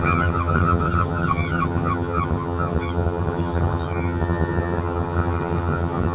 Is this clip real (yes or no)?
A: no